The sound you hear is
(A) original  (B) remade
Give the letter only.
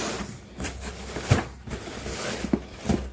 A